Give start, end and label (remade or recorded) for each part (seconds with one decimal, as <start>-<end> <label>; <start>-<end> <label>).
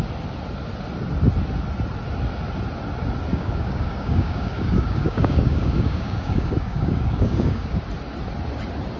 0.0-3.3 recorded; 3.3-7.8 remade; 7.8-9.0 recorded